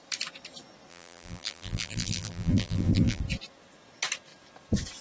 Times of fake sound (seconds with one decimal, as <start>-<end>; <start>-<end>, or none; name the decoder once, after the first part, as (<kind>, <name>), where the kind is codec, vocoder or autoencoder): 0.9-3.2 (vocoder, BigVGAN v2)